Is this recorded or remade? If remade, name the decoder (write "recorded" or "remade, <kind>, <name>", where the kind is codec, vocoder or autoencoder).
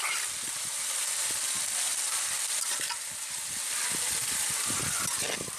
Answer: recorded